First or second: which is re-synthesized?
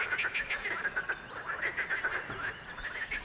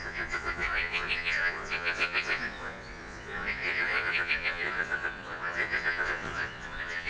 second